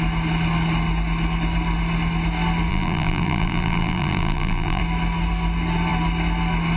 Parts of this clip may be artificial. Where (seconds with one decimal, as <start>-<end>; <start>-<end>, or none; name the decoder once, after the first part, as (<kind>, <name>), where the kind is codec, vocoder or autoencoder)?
2.7-4.8 (vocoder, BigVGAN v2)